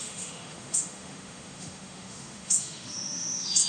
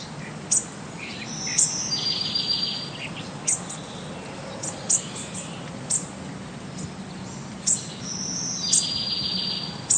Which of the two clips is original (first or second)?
second